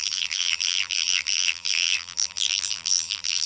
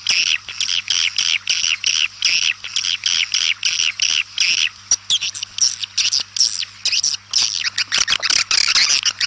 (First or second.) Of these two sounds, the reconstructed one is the first